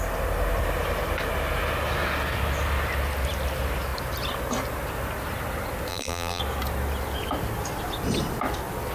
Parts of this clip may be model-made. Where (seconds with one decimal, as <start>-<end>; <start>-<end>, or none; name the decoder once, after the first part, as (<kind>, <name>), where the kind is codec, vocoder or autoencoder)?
5.9-6.4 (vocoder, BigVGAN v2)

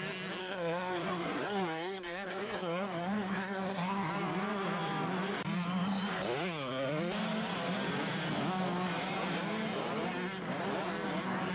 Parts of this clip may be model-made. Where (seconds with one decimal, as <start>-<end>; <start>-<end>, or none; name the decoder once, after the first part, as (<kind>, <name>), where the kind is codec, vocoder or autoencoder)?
0.4-4.1 (codec, SNAC)

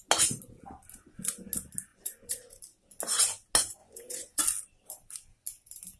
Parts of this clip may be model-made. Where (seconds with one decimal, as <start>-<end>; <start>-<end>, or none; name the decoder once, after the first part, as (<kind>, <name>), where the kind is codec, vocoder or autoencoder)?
1.9-2.6 (vocoder, Vocos); 3.8-4.4